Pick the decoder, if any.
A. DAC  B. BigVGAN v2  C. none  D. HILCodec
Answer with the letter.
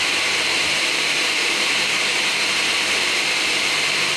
B